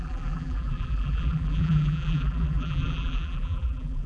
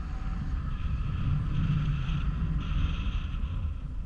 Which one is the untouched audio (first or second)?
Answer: second